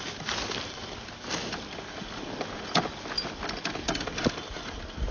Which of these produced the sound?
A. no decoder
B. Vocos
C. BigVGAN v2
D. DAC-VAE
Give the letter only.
A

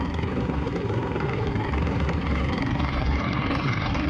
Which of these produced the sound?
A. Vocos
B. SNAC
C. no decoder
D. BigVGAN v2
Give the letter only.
B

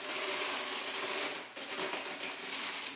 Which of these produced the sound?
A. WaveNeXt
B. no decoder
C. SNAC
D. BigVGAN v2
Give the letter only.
B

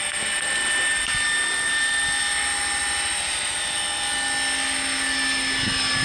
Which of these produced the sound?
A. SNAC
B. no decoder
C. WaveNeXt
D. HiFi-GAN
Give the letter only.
B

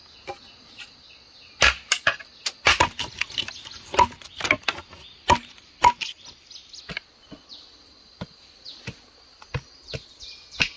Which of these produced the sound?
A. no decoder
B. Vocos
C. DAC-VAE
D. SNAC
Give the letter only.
A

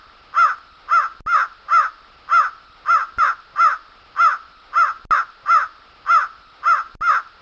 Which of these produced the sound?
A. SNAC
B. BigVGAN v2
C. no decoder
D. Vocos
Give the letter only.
C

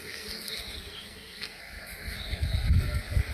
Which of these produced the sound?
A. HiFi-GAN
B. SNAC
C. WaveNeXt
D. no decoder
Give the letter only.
B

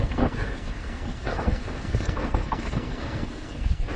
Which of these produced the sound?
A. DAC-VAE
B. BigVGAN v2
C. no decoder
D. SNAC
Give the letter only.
D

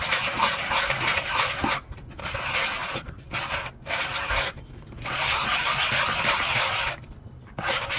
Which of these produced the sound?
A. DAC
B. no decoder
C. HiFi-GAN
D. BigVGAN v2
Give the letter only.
B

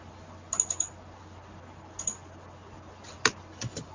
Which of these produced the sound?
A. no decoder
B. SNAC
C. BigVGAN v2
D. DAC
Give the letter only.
A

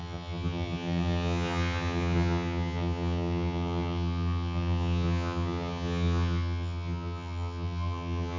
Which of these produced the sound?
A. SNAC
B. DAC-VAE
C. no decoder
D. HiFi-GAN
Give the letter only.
D